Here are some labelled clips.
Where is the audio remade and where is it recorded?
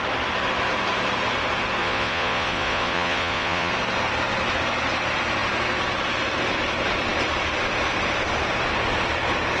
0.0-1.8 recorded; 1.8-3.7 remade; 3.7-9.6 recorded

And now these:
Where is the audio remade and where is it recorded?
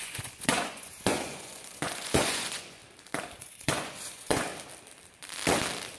0.0-2.8 remade; 2.8-3.4 recorded; 3.4-4.5 remade; 4.5-6.0 recorded